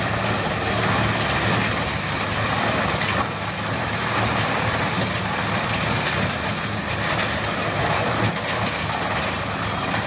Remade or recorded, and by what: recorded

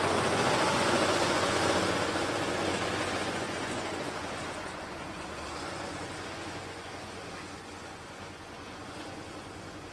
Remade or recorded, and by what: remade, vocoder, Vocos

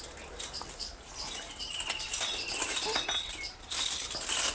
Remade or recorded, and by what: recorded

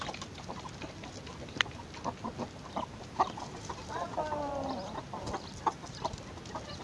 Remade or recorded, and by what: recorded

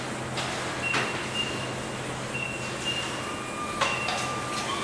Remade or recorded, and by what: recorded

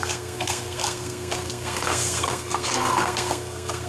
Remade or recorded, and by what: remade, codec, SNAC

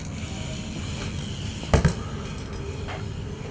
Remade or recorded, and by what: recorded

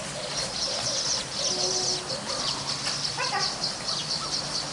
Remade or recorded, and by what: recorded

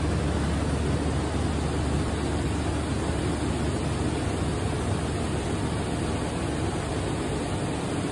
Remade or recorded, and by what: recorded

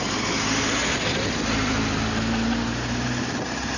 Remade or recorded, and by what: recorded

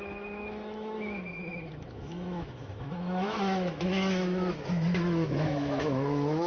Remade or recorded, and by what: remade, autoencoder, DAC-VAE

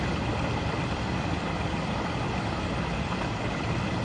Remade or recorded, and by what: remade, vocoder, BigVGAN v2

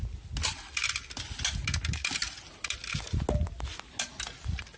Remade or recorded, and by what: recorded